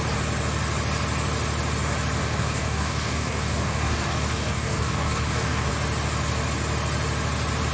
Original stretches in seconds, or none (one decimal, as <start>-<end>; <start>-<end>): 0.0-2.2; 5.7-7.7

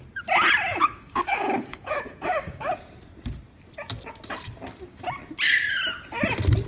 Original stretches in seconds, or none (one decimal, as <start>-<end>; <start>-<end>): 0.0-0.7; 2.7-6.7

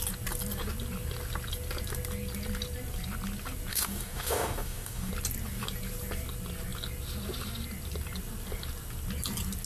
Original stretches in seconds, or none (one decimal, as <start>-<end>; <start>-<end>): 0.0-3.7; 5.1-9.7

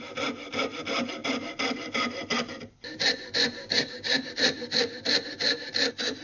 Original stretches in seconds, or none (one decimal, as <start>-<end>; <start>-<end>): 0.0-3.6; 4.3-6.2

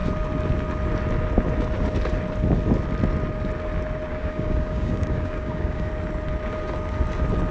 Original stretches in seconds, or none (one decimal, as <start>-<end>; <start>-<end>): 0.0-4.1; 5.9-7.5